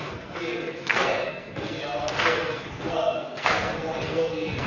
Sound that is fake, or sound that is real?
fake